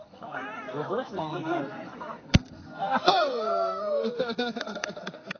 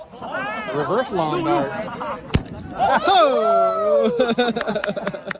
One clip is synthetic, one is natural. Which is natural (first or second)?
second